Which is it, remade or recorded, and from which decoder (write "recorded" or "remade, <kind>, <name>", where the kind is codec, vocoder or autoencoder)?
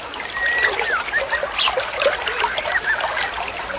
recorded